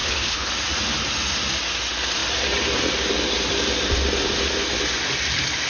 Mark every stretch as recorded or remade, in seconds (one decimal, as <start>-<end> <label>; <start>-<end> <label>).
0.0-0.5 remade; 0.5-5.7 recorded

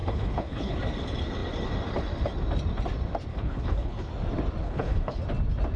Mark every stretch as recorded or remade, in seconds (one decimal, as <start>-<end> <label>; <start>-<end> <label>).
0.0-0.8 remade; 0.8-3.3 recorded; 3.3-4.1 remade; 4.1-4.6 recorded; 4.6-5.2 remade; 5.2-5.8 recorded

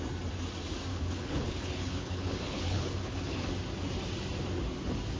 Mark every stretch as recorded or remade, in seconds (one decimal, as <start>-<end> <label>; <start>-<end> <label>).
0.0-0.9 recorded; 0.9-3.5 remade; 3.5-5.2 recorded

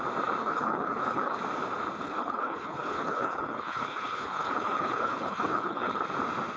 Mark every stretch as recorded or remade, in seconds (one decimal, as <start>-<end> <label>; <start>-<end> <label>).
0.0-0.4 recorded; 0.4-1.4 remade; 1.4-2.0 recorded; 2.0-6.0 remade; 6.0-6.6 recorded

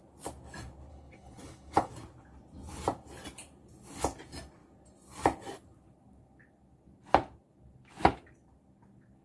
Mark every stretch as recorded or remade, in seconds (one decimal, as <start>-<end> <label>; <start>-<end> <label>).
0.0-0.9 recorded; 0.9-1.9 remade; 1.9-9.2 recorded

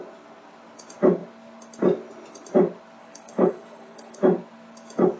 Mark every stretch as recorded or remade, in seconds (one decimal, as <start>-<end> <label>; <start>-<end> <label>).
0.0-3.0 recorded; 3.0-4.2 remade; 4.2-5.2 recorded